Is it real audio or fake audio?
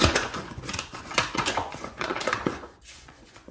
fake